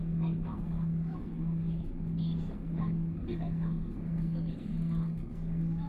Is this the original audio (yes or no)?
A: no